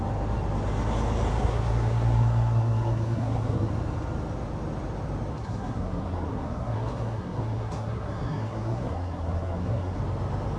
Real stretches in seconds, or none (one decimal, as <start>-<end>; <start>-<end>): 0.0-1.3; 3.7-5.3; 10.0-10.6

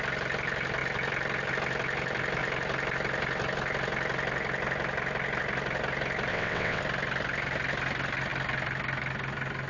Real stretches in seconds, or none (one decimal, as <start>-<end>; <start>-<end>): 0.0-6.3; 6.8-9.7